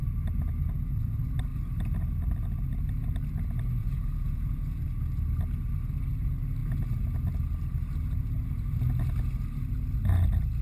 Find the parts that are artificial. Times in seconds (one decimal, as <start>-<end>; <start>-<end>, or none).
3.8-4.8